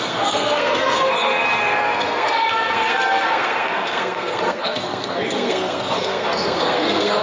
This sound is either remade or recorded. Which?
remade